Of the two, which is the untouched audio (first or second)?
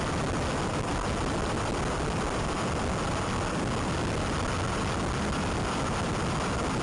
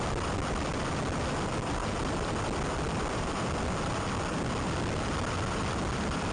first